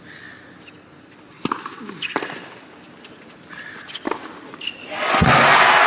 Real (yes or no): yes